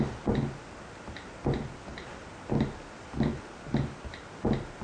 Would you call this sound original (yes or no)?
yes